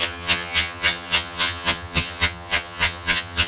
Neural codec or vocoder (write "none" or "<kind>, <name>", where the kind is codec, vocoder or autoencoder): vocoder, HiFi-GAN